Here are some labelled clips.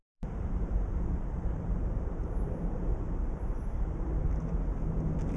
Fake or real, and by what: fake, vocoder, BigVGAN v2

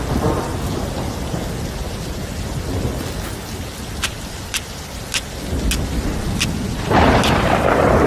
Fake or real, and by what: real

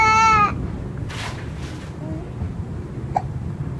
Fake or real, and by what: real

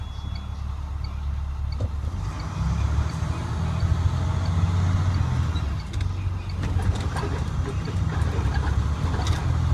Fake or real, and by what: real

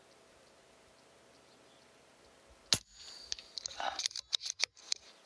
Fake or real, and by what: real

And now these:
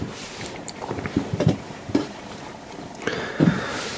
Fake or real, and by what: fake, vocoder, BigVGAN v2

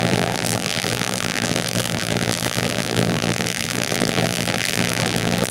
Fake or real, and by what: fake, vocoder, BigVGAN v2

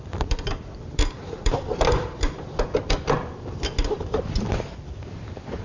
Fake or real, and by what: fake, vocoder, BigVGAN v2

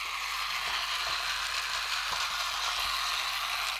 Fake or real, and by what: real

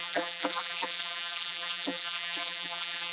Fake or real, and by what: fake, vocoder, BigVGAN v2